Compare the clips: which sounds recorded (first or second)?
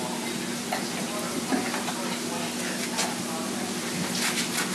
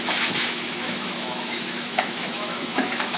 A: first